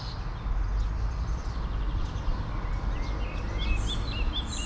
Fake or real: real